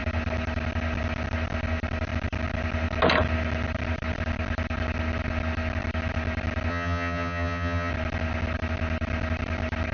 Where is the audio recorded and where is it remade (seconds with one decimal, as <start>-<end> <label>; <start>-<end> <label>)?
0.0-6.7 recorded; 6.7-7.9 remade; 7.9-9.9 recorded